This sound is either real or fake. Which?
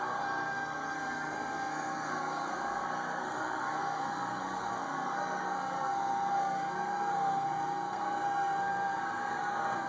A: fake